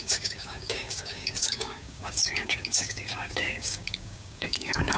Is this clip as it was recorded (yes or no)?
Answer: no